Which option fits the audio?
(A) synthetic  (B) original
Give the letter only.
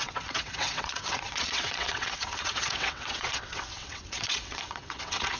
A